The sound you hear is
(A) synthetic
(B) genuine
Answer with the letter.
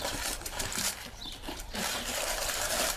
A